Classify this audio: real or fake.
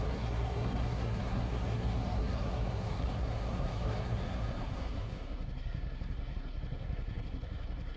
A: fake